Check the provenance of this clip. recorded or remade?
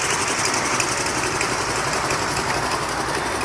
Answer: recorded